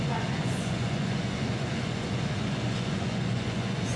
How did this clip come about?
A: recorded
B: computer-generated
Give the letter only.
B